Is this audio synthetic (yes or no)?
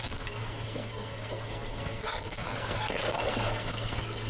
yes